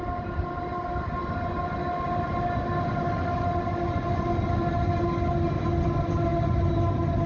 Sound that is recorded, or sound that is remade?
recorded